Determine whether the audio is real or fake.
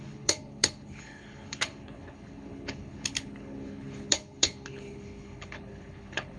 fake